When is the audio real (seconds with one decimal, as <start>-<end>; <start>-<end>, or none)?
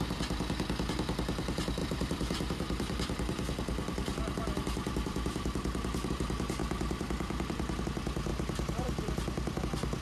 0.0-1.8; 6.1-6.6; 7.8-8.3; 9.6-10.0